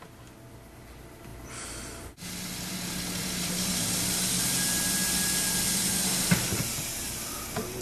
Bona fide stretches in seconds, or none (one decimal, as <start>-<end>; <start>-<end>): 0.0-7.8